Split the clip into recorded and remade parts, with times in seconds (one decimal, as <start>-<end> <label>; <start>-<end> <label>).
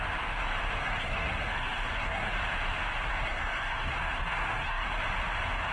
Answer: 0.0-0.8 recorded; 0.8-2.3 remade; 2.3-3.1 recorded; 3.1-4.9 remade; 4.9-5.7 recorded